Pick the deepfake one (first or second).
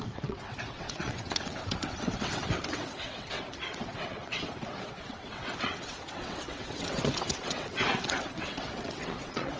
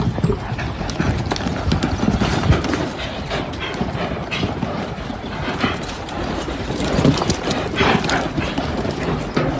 first